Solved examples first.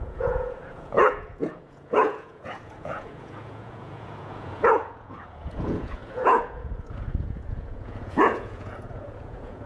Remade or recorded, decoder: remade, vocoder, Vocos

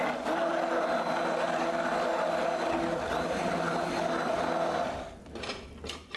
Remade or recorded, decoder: recorded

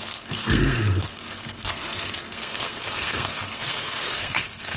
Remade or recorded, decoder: remade, codec, SNAC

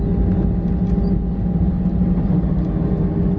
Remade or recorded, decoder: recorded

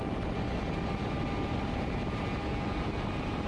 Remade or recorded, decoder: recorded